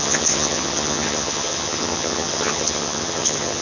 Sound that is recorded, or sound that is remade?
remade